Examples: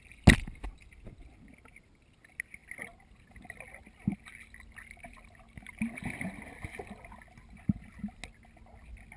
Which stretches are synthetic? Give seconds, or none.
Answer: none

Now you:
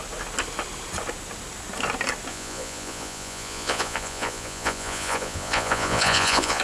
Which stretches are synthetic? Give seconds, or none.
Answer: 2.3-6.6 (vocoder, Vocos)

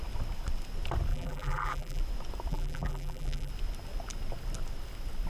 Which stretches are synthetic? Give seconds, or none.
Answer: 1.1-2.0 (vocoder, BigVGAN v2); 2.5-3.5